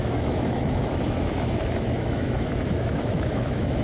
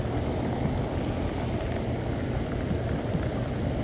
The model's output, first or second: first